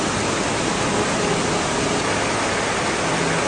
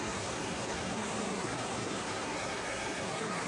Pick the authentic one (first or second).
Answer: first